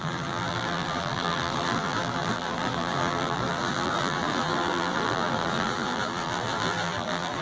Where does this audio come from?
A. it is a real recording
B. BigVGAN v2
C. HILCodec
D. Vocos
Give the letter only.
B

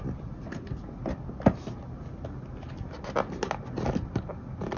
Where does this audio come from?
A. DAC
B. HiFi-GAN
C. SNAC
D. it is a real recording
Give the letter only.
D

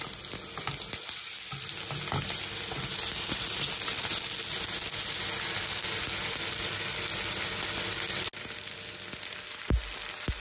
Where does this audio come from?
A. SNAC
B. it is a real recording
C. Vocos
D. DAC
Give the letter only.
B